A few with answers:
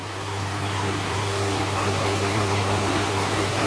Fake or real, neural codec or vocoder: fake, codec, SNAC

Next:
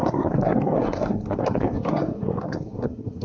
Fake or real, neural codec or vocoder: fake, codec, SNAC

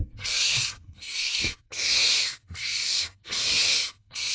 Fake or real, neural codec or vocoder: fake, codec, SNAC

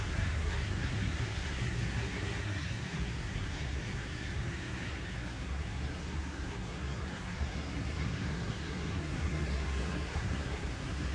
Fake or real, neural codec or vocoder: fake, codec, SNAC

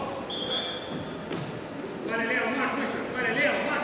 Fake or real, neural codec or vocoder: real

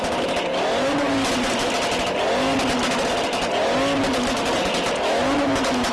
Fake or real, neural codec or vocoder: real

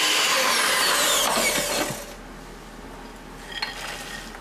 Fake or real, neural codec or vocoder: real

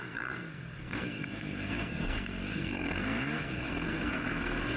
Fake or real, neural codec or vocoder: fake, codec, SNAC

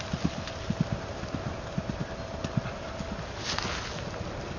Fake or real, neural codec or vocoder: real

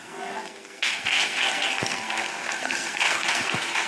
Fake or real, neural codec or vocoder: fake, codec, SNAC